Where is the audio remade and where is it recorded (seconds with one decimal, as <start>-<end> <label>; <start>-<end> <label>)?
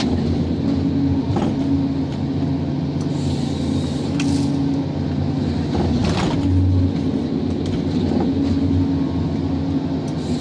0.0-10.4 recorded